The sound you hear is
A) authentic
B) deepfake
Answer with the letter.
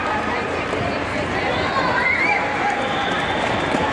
A